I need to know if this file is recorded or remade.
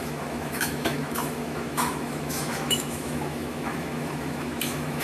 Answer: remade